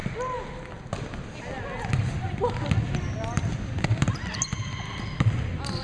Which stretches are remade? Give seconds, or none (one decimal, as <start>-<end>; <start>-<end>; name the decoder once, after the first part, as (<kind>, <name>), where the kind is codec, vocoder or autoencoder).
none

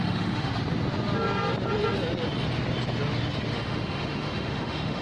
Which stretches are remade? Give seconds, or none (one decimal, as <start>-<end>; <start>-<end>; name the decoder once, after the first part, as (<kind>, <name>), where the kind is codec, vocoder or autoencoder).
0.0-0.5 (autoencoder, DAC-VAE); 3.5-5.0

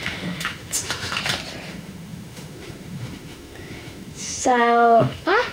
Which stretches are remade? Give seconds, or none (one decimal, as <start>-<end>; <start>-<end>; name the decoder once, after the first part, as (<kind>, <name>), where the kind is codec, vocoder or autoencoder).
0.0-1.2 (autoencoder, DAC-VAE); 1.7-5.5

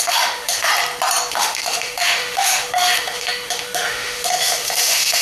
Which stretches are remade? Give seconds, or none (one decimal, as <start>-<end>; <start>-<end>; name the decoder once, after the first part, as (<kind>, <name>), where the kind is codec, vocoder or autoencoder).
0.0-0.7 (autoencoder, DAC-VAE); 1.3-5.2

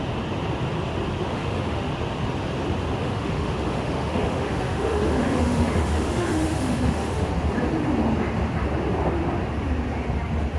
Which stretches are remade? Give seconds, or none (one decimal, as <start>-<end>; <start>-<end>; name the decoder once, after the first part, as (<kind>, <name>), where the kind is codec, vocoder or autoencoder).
1.3-1.9 (autoencoder, DAC-VAE); 3.0-7.3

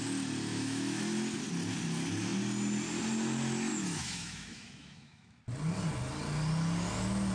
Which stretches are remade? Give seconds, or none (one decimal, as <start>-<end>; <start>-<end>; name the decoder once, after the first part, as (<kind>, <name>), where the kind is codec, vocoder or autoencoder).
0.5-1.0 (autoencoder, DAC-VAE); 3.7-5.4

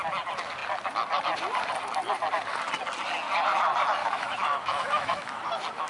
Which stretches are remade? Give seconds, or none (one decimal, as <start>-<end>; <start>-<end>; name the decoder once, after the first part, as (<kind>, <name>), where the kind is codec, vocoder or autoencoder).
4.0-5.4 (autoencoder, DAC-VAE)